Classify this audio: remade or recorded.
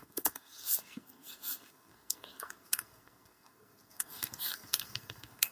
remade